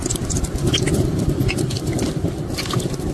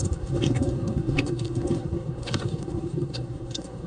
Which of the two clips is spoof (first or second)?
second